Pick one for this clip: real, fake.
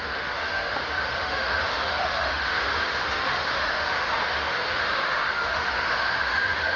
fake